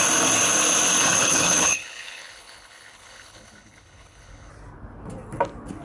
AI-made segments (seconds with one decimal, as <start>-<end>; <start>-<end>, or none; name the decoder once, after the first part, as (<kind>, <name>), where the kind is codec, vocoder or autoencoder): 1.0-4.5 (codec, HILCodec)